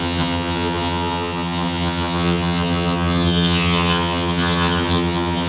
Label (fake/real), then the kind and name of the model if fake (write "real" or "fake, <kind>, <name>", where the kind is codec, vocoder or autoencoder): fake, vocoder, HiFi-GAN